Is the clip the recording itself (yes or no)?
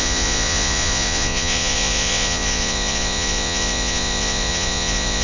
no